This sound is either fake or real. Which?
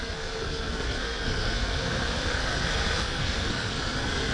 fake